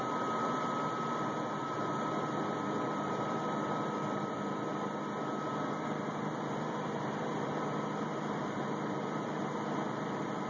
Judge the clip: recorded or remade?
remade